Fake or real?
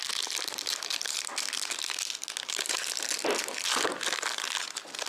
real